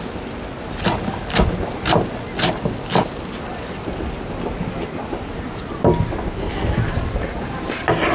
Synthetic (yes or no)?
no